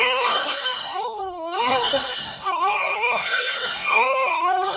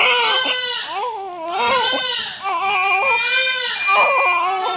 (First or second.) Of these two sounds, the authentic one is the second